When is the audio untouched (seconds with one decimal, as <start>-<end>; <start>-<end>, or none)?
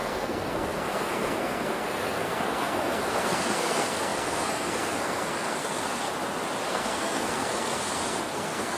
6.1-6.7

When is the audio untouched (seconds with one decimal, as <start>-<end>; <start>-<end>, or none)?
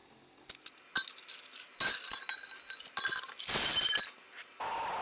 0.0-5.0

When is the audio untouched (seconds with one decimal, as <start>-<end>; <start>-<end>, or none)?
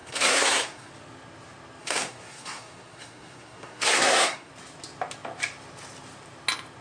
0.9-1.8; 4.5-6.8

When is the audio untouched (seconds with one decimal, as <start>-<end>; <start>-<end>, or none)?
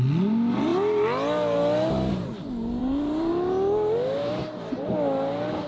0.0-2.8; 3.3-4.2; 4.9-5.7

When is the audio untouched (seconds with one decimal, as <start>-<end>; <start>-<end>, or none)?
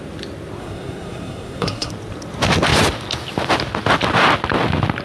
0.0-0.6; 1.9-5.0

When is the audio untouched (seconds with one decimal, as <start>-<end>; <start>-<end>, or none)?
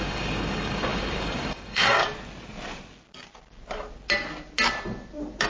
2.0-5.5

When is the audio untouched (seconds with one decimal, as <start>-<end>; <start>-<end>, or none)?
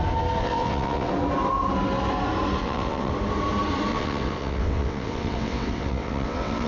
0.0-0.4; 1.1-2.6; 3.1-3.9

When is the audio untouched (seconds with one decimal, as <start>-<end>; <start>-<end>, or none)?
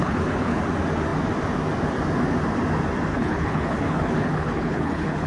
0.6-3.1